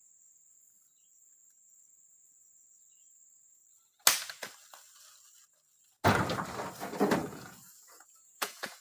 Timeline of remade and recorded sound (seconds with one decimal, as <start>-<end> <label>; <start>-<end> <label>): 0.0-7.2 recorded; 7.2-8.8 remade